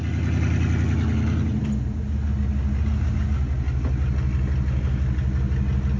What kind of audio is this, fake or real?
real